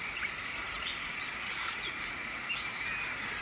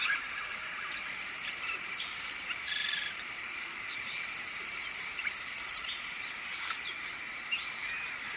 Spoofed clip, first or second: second